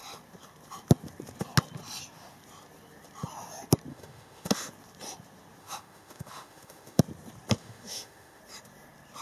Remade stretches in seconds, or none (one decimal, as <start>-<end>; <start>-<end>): 3.9-4.7; 5.6-7.0; 7.6-8.4